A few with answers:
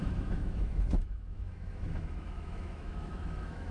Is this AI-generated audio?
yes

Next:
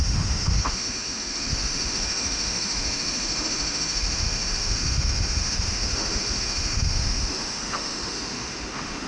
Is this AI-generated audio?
yes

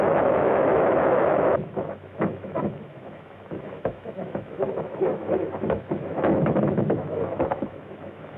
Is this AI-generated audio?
yes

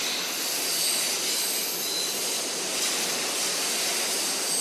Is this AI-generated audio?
no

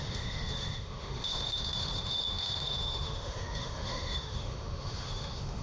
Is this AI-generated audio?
yes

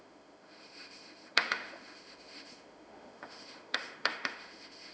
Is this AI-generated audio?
yes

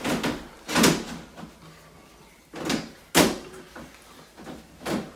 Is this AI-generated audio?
no